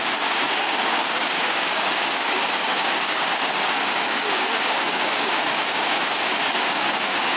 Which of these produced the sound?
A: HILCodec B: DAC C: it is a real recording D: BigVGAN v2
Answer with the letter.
B